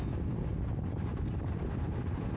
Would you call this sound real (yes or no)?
yes